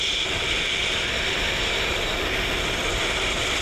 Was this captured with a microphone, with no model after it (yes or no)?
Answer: yes